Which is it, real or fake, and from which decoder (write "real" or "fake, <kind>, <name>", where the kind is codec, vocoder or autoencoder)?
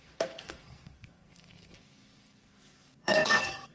fake, codec, SNAC